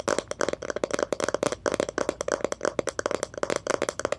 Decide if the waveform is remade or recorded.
recorded